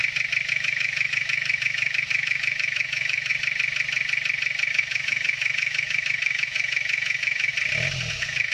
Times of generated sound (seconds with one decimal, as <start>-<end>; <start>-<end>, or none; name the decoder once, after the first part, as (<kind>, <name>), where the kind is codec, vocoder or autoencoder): 0.5-3.3 (autoencoder, DAC-VAE); 4.7-7.5; 8.1-8.5